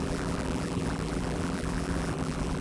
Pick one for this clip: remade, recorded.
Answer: remade